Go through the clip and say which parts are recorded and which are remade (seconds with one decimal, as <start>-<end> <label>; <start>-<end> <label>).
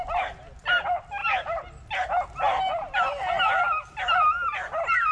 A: 0.0-5.1 recorded